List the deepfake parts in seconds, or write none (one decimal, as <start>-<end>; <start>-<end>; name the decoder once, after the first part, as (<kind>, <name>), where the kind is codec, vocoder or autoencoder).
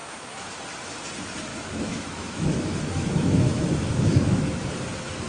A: 0.0-0.5 (autoencoder, DAC-VAE); 1.5-4.7